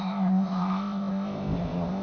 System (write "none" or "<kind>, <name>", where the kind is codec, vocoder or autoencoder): codec, ZipCodec